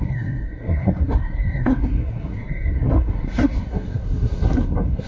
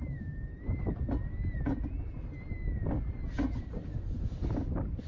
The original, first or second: second